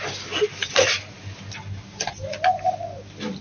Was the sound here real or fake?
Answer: real